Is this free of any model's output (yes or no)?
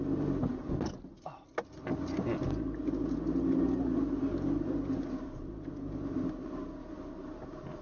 yes